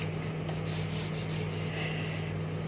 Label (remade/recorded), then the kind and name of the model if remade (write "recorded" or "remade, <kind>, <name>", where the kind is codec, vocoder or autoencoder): recorded